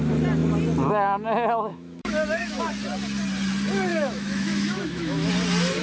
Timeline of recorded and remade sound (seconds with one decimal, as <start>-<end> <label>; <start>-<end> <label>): 0.0-1.7 recorded; 1.7-2.6 remade; 2.6-3.9 recorded; 3.9-5.3 remade; 5.3-5.8 recorded